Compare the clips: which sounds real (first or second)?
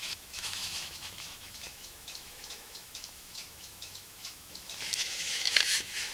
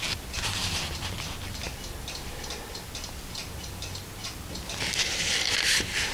second